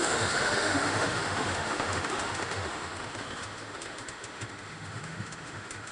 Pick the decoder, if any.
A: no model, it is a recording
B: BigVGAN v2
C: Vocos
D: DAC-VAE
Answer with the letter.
D